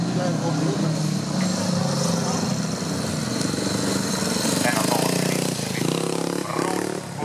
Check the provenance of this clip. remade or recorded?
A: recorded